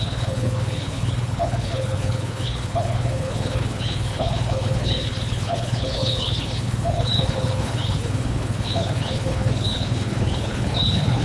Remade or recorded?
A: remade